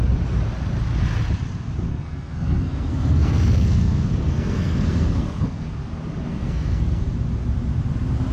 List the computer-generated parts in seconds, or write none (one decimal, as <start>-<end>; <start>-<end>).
1.9-5.7; 6.3-7.0